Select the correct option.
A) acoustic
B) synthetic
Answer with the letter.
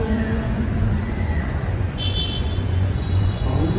B